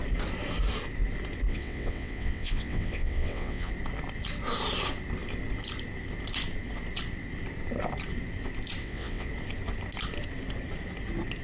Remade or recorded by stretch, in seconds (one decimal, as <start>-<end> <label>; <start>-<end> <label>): 0.0-1.5 recorded; 1.5-3.7 remade; 3.7-8.8 recorded; 8.8-9.3 remade; 9.3-11.4 recorded